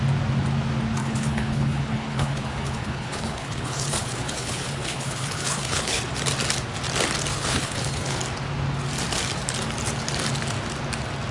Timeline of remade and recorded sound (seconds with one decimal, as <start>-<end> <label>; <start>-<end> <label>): 0.0-1.0 recorded; 1.0-6.0 remade; 6.0-7.3 recorded; 7.3-8.2 remade; 8.2-11.3 recorded